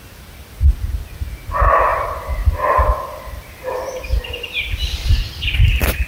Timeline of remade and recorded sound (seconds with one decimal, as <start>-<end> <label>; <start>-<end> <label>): 0.0-1.9 recorded; 1.9-5.6 remade; 5.6-6.1 recorded